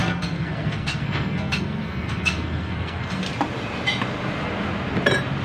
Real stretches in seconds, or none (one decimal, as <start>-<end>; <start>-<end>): 3.2-5.4